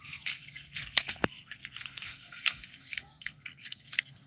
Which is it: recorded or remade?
remade